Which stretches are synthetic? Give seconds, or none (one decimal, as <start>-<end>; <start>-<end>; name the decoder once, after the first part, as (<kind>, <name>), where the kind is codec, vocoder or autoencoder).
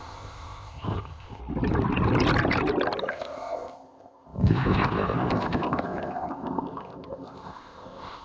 0.0-1.4 (codec, ZipCodec); 3.1-8.2